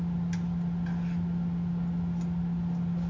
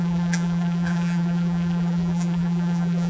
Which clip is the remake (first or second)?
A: second